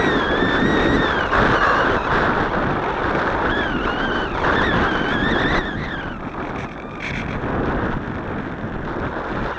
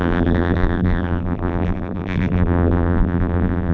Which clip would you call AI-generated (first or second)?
second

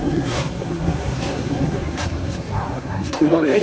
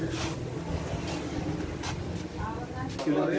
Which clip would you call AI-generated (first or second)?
first